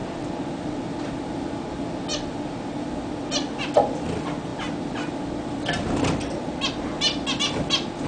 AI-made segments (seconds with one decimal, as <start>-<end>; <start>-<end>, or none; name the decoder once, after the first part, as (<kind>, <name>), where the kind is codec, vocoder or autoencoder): none